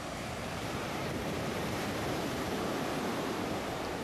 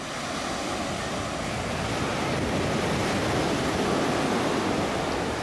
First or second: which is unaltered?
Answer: second